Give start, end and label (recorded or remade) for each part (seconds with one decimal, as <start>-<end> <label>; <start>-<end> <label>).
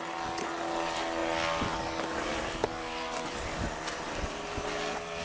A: 0.0-5.2 recorded